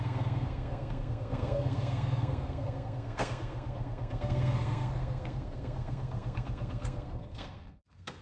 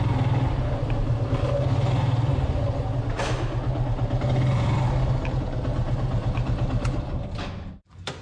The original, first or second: second